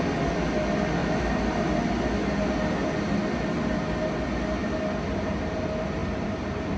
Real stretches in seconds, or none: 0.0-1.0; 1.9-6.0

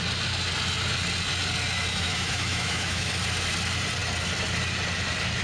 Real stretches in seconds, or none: 0.0-1.9; 3.1-5.4

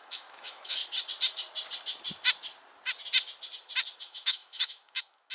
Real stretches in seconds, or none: 0.8-4.0